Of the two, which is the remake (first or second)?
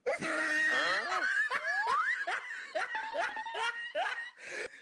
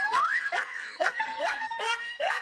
second